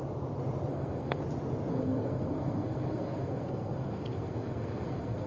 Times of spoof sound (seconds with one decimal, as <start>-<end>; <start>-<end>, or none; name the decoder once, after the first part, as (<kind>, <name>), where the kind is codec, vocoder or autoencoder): 0.7-1.2 (codec, SNAC); 1.7-5.3